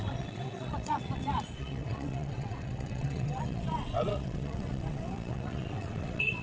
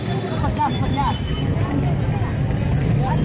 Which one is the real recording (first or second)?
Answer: second